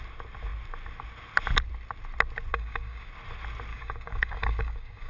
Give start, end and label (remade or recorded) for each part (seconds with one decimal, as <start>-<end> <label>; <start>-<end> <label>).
0.0-2.5 recorded; 2.5-3.1 remade; 3.1-3.7 recorded; 3.7-5.1 remade